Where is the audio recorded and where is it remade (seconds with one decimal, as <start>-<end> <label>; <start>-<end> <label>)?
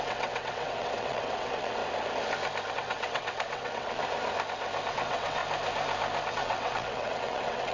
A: 0.0-1.8 remade; 1.8-2.7 recorded; 2.7-4.0 remade; 4.0-4.9 recorded; 4.9-5.4 remade; 5.4-6.3 recorded; 6.3-7.7 remade